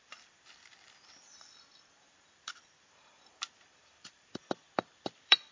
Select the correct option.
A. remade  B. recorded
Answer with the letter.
A